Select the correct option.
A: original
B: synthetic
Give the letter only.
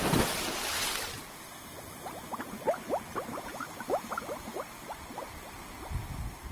A